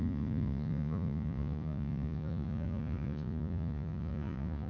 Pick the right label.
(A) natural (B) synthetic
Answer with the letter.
B